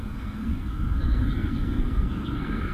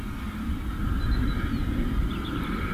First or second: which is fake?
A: first